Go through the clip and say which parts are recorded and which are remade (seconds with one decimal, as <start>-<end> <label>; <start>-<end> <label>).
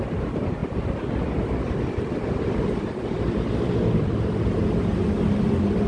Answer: 0.0-5.9 recorded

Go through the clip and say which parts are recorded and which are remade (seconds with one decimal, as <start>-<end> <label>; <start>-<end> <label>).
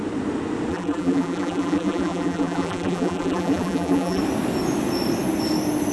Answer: 0.0-0.7 recorded; 0.7-4.2 remade; 4.2-5.9 recorded